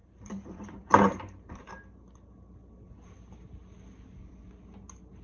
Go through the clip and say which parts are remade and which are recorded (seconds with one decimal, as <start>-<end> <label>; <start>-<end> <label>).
0.0-1.7 remade; 1.7-5.2 recorded